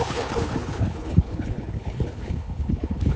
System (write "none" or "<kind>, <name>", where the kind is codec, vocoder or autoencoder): codec, HILCodec